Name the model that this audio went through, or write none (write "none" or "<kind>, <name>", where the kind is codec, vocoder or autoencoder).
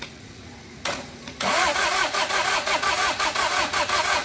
vocoder, Vocos